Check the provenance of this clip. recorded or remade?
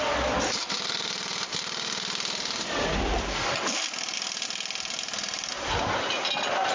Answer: recorded